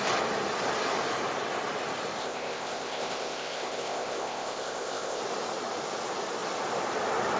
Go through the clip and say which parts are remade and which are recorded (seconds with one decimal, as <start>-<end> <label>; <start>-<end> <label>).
0.0-2.2 recorded; 2.2-5.2 remade; 5.2-7.4 recorded